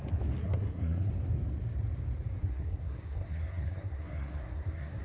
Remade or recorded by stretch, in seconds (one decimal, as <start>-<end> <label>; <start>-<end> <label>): 0.0-0.4 recorded; 0.4-1.1 remade; 1.1-2.4 recorded; 2.4-5.0 remade